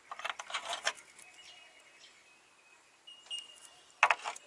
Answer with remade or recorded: recorded